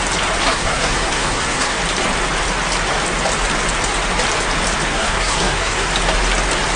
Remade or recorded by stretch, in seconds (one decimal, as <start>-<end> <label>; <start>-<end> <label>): 0.0-0.4 recorded; 0.4-1.8 remade; 1.8-4.9 recorded; 4.9-5.9 remade; 5.9-6.8 recorded